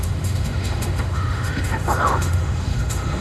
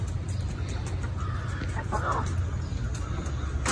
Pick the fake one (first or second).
first